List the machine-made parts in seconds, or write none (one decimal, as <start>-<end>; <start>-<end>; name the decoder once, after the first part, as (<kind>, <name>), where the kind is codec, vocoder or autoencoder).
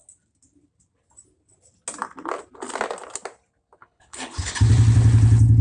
3.8-4.5 (codec, HILCodec)